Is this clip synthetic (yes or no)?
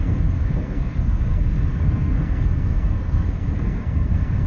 yes